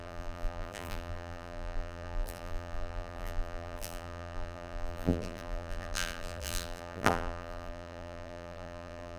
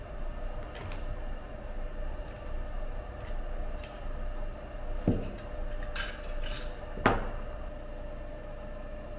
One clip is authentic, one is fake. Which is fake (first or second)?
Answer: first